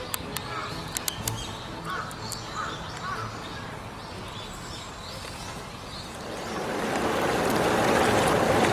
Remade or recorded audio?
recorded